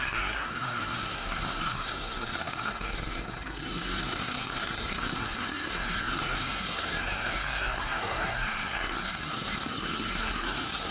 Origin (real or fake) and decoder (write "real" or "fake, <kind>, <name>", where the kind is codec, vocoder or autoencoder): fake, codec, SNAC